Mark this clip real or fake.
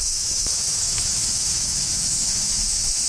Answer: fake